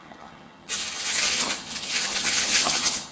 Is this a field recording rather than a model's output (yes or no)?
no